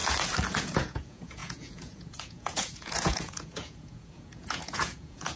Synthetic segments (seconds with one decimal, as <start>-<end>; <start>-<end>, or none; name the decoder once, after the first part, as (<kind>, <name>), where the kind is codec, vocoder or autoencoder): 0.6-5.4 (vocoder, Vocos)